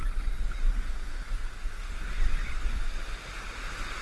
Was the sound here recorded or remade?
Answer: recorded